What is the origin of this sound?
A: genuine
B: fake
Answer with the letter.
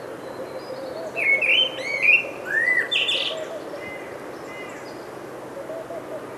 A